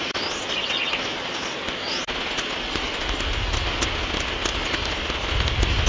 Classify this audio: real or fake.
real